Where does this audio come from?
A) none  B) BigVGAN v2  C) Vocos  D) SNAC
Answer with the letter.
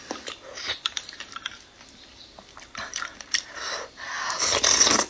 B